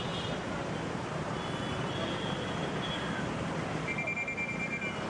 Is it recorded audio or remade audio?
recorded